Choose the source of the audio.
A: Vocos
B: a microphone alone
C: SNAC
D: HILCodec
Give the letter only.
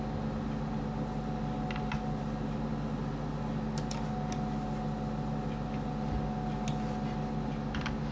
B